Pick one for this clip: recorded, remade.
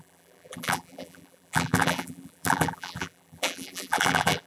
remade